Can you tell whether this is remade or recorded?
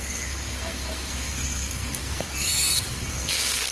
remade